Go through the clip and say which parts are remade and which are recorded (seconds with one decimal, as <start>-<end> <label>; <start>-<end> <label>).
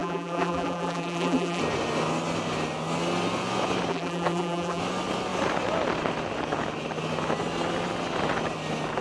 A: 0.0-1.6 remade; 1.6-3.9 recorded; 3.9-4.8 remade; 4.8-9.0 recorded